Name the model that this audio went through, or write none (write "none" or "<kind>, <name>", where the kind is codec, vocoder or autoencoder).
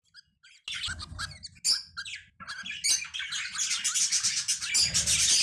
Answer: none